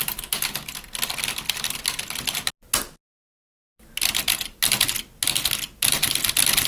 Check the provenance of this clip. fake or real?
real